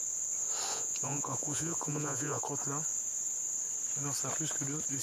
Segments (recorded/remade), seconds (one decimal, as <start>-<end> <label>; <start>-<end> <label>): 0.0-0.7 recorded; 0.7-2.4 remade; 2.4-5.0 recorded